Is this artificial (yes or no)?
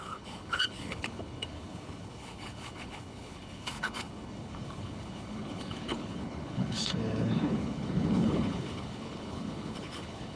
yes